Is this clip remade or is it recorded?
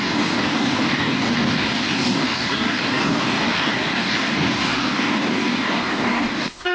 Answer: remade